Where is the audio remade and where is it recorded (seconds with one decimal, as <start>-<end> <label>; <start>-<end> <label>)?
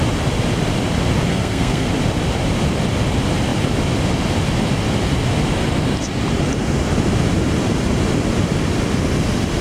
0.0-1.3 recorded; 1.3-1.9 remade; 1.9-9.6 recorded